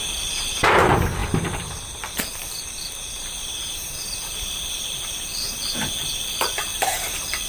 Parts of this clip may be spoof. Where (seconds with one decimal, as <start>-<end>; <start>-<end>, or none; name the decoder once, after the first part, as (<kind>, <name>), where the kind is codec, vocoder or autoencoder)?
0.0-7.5 (vocoder, BigVGAN v2)